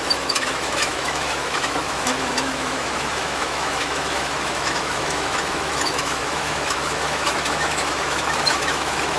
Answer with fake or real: fake